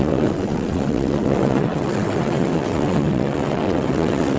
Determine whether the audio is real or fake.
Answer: fake